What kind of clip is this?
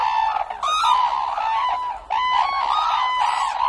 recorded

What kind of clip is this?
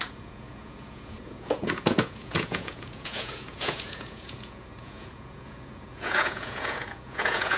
remade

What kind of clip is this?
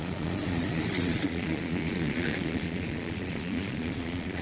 remade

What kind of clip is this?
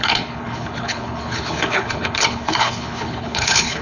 remade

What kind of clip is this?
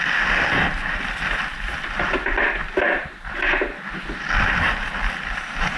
recorded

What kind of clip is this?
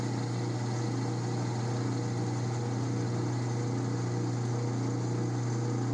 recorded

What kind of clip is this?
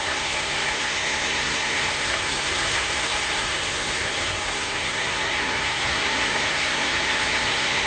remade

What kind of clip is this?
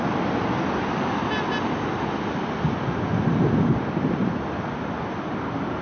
recorded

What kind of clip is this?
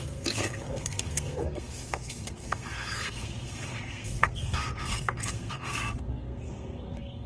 remade